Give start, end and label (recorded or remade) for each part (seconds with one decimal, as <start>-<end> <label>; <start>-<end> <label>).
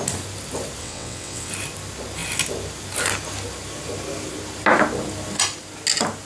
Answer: 0.0-0.8 recorded; 0.8-1.5 remade; 1.5-6.3 recorded